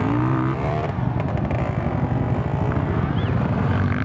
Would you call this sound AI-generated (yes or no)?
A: no